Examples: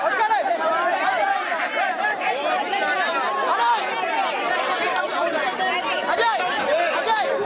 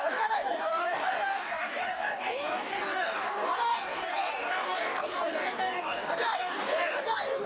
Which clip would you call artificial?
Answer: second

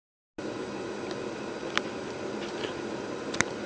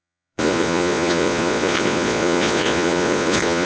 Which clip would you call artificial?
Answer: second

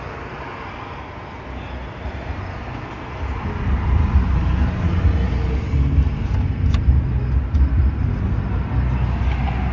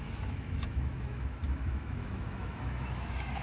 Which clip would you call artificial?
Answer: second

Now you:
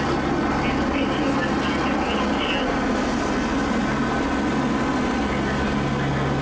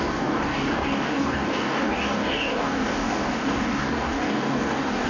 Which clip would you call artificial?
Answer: second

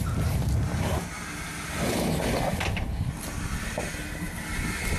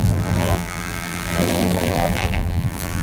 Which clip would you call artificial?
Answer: second